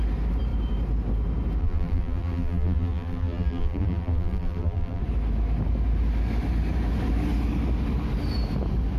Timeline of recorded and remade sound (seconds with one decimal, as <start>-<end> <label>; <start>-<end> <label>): 0.0-1.6 recorded; 1.6-5.0 remade; 5.0-9.0 recorded